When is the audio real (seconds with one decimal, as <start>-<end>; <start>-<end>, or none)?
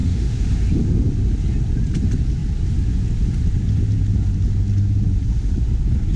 0.5-6.2